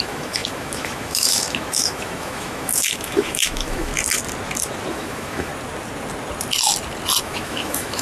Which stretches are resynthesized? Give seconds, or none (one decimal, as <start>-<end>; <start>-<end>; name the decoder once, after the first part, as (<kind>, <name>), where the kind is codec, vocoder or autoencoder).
0.0-3.9 (autoencoder, DAC-VAE); 4.9-5.5; 7.2-8.0

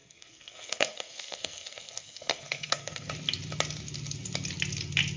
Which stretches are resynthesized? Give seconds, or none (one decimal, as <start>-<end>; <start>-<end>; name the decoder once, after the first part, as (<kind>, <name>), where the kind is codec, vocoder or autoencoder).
0.0-3.1 (codec, SNAC)

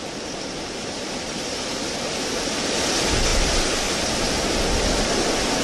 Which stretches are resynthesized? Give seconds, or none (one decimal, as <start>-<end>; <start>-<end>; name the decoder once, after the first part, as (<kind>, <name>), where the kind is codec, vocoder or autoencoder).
0.8-1.7 (vocoder, BigVGAN v2); 3.3-4.1

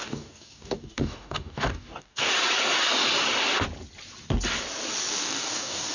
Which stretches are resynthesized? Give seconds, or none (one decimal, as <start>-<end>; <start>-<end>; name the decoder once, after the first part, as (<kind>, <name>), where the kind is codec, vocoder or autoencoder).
0.0-2.3 (codec, DAC); 5.1-5.9